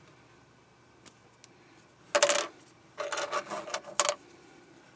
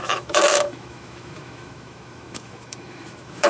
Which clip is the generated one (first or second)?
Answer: second